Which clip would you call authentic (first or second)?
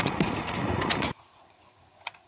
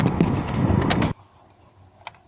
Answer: second